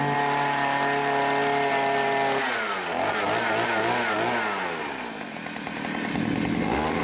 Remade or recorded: recorded